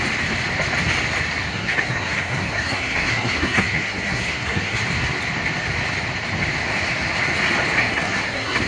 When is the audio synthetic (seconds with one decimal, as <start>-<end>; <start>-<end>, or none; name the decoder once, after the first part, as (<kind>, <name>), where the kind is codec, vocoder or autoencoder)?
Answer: 1.5-4.8 (codec, SNAC); 7.8-8.7